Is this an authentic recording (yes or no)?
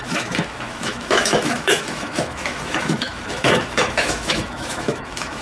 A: no